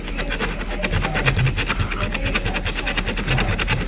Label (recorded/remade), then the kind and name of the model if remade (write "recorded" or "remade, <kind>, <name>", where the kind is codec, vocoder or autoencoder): recorded